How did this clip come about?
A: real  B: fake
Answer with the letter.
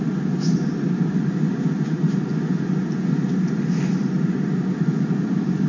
A